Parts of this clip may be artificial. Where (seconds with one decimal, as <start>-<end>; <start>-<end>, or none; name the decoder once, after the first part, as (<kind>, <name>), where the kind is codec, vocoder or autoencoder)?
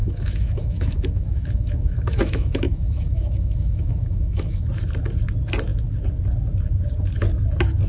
0.0-4.7 (autoencoder, DAC-VAE)